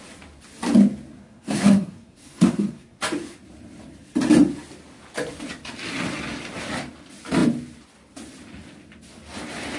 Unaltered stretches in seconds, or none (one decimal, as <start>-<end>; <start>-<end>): 0.0-1.2; 3.0-9.8